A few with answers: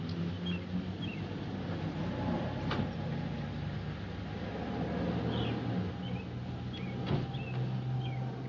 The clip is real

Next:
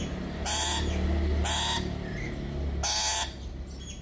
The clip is real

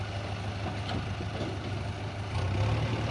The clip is real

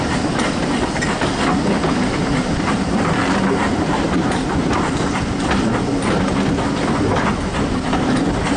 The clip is real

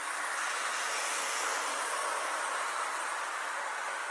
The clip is real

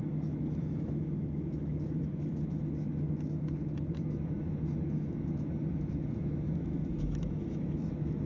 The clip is fake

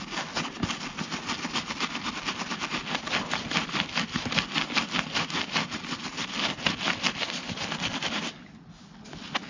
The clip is real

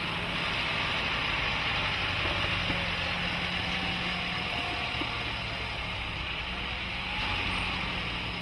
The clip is real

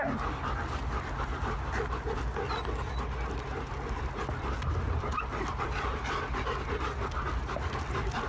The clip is real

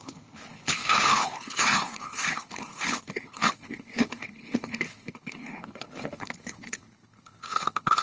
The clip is fake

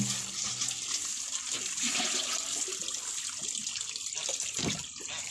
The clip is real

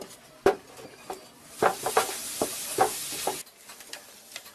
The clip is real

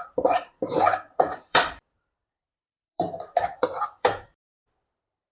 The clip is fake